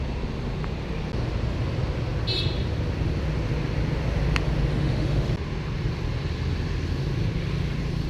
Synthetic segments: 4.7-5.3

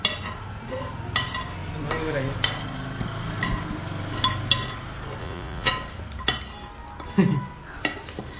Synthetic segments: 5.2-5.7